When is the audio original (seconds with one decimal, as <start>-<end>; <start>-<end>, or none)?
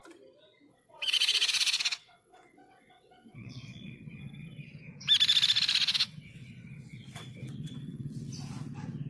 0.0-0.7; 4.8-5.8; 8.3-9.1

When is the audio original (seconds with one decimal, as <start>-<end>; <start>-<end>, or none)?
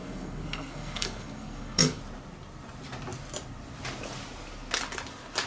2.0-5.5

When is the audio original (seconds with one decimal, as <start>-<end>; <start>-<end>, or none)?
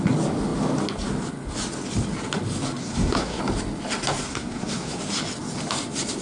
0.0-2.8; 3.4-4.3; 5.0-6.2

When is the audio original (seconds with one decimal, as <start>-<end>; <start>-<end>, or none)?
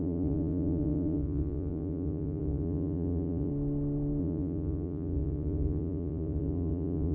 3.5-4.2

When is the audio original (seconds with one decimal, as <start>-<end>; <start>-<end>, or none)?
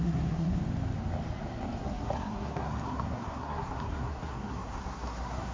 0.6-1.8